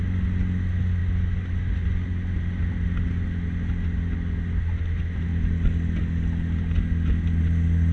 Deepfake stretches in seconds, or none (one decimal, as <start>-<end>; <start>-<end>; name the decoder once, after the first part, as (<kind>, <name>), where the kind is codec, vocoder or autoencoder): none